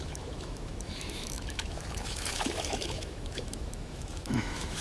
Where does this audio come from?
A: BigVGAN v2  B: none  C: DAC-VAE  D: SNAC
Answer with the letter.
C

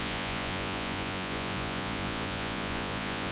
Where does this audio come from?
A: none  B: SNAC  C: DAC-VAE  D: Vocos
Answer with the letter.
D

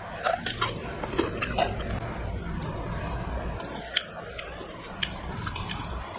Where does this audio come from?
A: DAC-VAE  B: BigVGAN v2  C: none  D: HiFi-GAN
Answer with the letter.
B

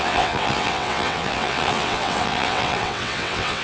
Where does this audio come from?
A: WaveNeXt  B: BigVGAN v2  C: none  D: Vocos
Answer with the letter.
A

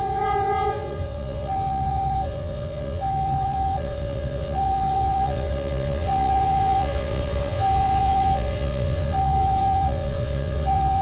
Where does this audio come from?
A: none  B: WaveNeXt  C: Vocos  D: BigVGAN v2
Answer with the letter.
B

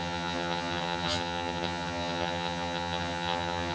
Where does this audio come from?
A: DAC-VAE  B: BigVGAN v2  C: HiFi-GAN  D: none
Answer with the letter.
C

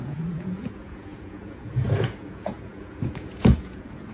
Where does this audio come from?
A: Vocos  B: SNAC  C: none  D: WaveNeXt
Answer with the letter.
A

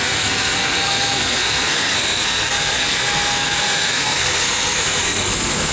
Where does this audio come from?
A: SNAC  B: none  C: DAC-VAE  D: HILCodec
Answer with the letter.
A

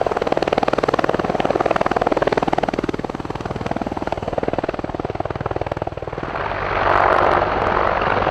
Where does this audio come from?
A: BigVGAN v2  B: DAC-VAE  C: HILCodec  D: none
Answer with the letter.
D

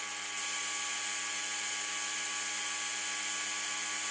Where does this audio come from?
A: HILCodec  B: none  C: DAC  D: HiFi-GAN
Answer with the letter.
B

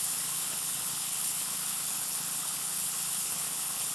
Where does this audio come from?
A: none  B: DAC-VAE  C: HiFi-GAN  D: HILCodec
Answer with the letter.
D